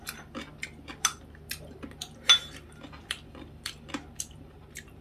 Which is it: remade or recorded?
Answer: recorded